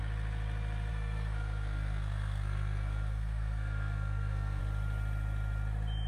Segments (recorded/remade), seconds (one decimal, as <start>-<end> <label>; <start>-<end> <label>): 0.0-0.9 recorded; 0.9-4.6 remade; 4.6-6.1 recorded